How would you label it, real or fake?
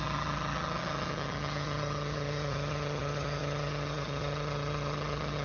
fake